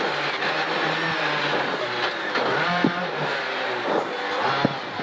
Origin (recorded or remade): recorded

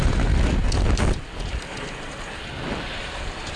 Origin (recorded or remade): recorded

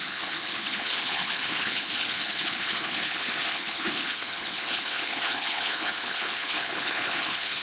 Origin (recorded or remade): remade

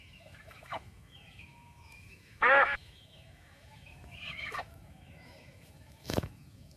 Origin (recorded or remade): remade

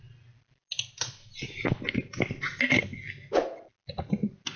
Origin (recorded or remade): recorded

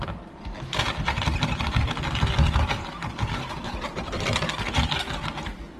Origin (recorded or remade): recorded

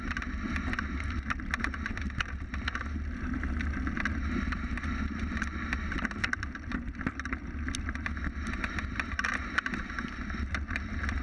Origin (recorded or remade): recorded